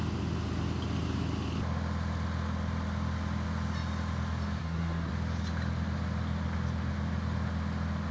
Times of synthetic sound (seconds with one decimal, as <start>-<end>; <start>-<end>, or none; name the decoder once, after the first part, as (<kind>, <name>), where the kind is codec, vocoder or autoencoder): 4.6-5.1 (codec, SNAC)